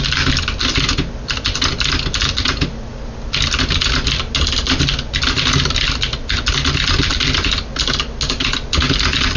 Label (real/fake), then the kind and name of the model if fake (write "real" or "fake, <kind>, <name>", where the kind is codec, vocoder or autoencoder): real